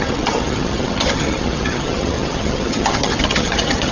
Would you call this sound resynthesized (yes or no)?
yes